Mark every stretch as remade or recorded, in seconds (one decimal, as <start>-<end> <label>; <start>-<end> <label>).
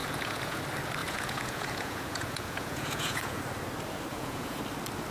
0.0-0.6 remade; 0.6-1.0 recorded; 1.0-3.4 remade; 3.4-4.1 recorded; 4.1-4.6 remade; 4.6-5.1 recorded